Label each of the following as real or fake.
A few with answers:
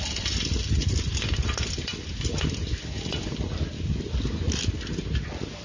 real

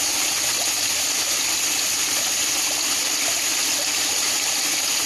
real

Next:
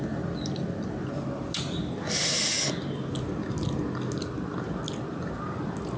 real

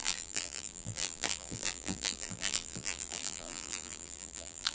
fake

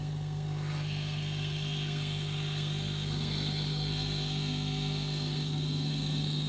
fake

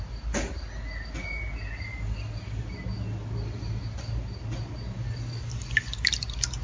real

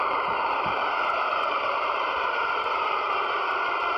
fake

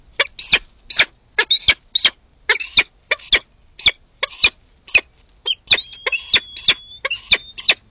real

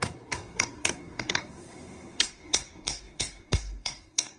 fake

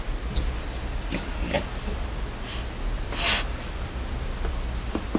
real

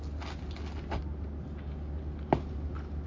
real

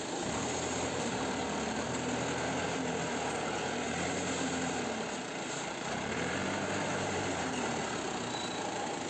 fake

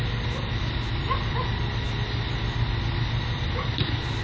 fake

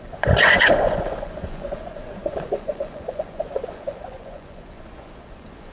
fake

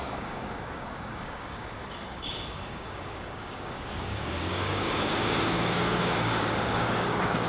fake